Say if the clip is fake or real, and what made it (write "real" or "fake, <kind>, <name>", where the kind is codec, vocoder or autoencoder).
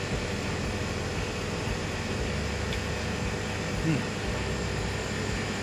real